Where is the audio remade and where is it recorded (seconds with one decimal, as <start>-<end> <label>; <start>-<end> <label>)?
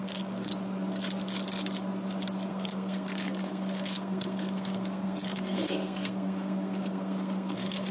0.0-0.5 remade; 0.5-2.5 recorded; 2.5-7.9 remade